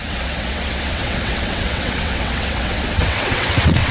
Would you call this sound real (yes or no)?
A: no